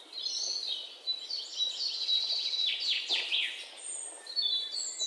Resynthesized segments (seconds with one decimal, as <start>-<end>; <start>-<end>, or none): 1.1-3.1